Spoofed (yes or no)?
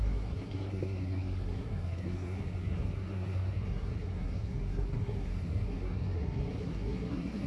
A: yes